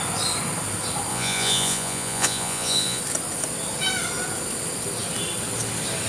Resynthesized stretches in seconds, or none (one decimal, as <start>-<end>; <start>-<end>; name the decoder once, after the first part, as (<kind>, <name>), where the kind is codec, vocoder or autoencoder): 1.1-3.0 (vocoder, Vocos)